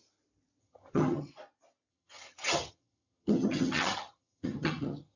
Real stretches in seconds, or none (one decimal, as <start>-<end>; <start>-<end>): 0.0-0.6; 1.3-1.9